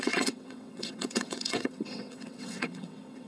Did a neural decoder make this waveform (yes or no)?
yes